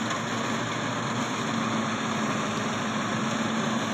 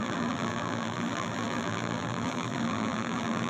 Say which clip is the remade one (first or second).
second